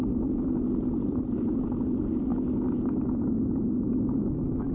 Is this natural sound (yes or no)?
yes